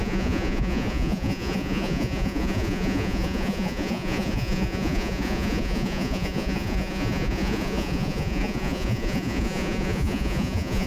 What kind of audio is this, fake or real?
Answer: fake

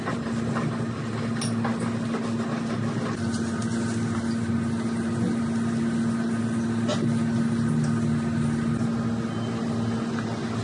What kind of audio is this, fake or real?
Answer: real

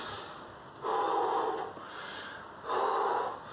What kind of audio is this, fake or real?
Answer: real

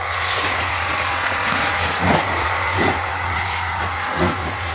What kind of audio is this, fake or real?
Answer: fake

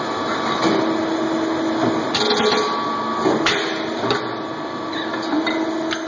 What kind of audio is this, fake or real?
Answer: real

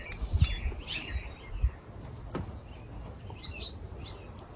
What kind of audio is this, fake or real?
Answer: real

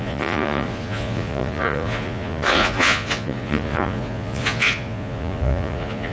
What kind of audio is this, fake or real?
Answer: fake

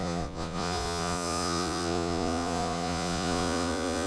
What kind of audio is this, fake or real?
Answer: fake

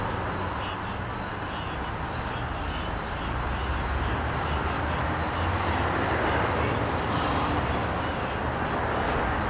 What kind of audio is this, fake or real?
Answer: real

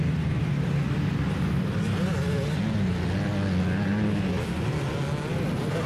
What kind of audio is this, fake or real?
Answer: real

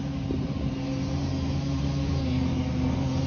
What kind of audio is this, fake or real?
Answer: real